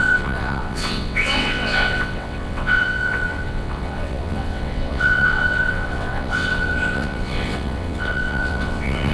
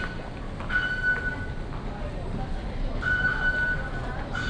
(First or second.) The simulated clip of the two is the first